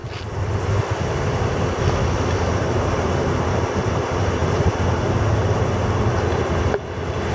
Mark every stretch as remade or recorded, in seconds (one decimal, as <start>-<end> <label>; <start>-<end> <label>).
0.0-7.3 recorded